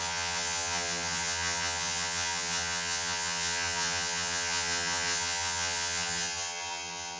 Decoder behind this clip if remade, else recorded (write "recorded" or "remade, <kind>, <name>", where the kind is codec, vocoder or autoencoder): remade, vocoder, HiFi-GAN